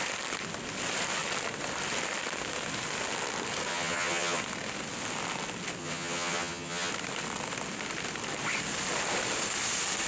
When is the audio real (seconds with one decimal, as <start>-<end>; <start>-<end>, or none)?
0.0-3.7; 4.4-5.8; 6.9-10.1